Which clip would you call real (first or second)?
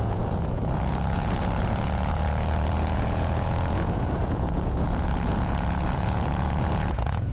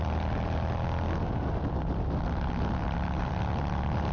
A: second